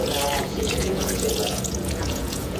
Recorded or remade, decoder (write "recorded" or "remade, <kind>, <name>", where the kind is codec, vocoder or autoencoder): remade, vocoder, Vocos